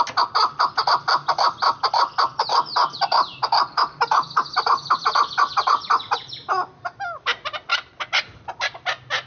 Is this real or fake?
real